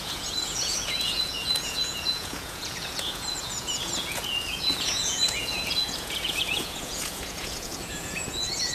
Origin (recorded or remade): remade